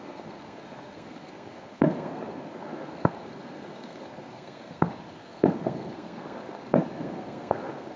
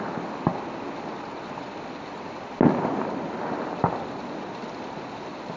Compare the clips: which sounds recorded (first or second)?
second